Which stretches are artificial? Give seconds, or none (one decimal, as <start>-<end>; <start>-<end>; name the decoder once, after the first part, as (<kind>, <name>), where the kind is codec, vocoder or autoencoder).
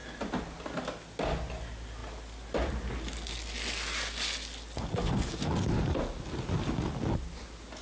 none